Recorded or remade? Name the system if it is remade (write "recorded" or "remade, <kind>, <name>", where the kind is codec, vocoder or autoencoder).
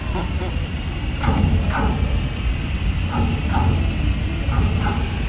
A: recorded